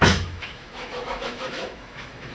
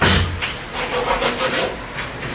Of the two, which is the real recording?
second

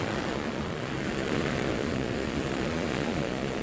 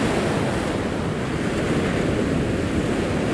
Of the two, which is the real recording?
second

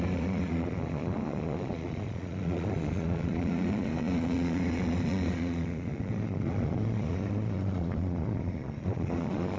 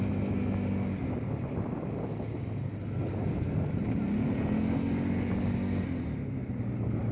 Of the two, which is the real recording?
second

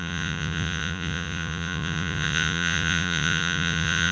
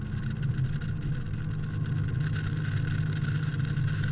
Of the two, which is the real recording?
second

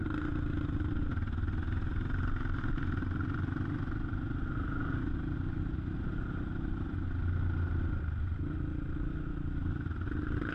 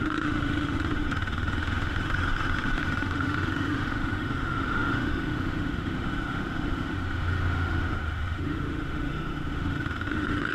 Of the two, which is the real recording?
first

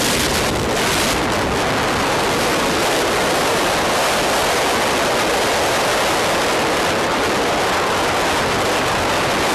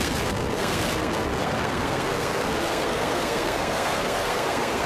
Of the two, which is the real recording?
first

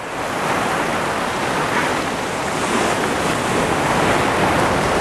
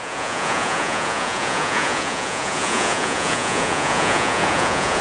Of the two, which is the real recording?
first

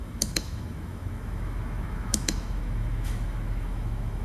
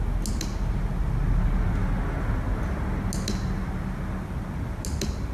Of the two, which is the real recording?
second